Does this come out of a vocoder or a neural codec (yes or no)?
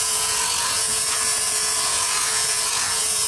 yes